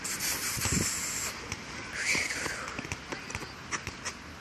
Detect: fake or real real